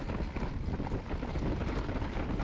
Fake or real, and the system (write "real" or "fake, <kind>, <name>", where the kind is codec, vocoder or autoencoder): real